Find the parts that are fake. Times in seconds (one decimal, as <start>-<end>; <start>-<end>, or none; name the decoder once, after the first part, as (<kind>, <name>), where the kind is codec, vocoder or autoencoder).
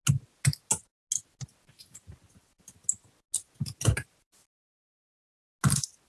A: none